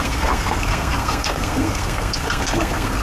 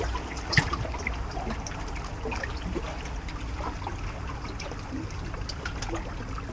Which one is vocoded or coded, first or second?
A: first